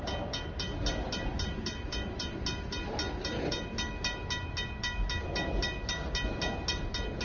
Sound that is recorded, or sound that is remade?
recorded